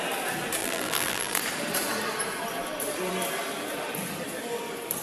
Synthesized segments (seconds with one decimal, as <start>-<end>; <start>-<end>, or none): 0.6-1.4